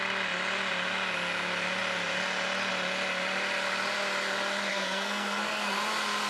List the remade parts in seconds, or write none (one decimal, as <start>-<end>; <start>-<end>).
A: 4.7-5.7